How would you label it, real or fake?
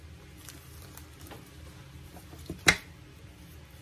real